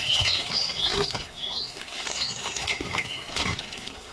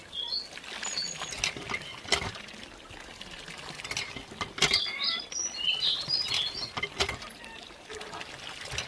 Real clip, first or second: second